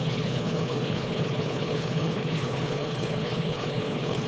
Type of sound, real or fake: fake